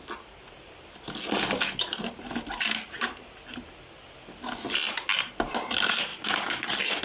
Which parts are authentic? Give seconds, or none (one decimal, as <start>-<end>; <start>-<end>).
0.0-7.0